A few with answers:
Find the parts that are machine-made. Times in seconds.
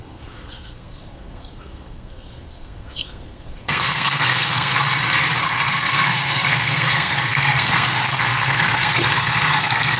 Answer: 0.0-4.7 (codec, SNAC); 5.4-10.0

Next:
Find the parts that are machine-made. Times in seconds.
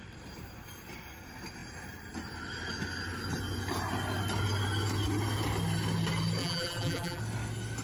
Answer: 6.4-7.2 (vocoder, BigVGAN v2)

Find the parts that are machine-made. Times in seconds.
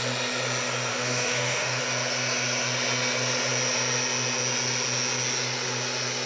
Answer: 0.9-1.8 (autoencoder, DAC-VAE)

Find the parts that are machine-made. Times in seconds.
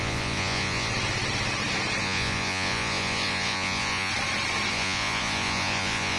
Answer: 0.0-0.9 (vocoder, Vocos); 2.0-4.1; 4.7-6.2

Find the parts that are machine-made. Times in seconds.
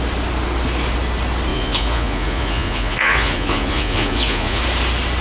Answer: 1.5-4.6 (vocoder, Vocos)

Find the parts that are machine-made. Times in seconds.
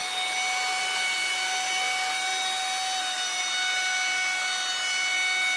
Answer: none